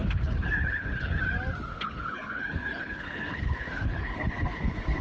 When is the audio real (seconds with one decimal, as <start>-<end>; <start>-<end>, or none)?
1.2-1.7